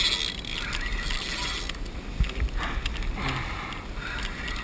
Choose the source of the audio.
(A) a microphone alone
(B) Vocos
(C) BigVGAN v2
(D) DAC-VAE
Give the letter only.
A